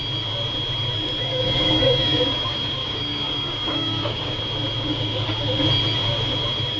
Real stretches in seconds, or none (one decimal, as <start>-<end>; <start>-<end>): 0.0-1.3; 4.4-4.9; 5.6-6.8